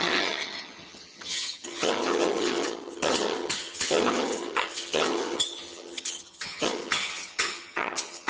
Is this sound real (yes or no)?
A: no